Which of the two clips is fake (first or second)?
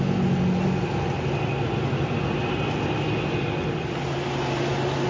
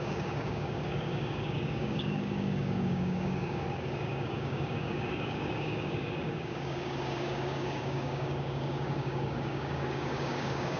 second